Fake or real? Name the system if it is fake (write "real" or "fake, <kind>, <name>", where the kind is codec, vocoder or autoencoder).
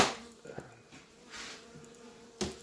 real